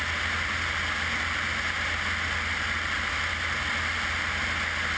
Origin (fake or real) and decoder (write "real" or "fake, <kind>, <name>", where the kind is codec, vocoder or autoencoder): real